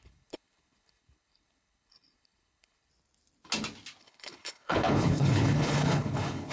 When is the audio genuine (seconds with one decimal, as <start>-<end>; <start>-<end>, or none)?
2.9-4.0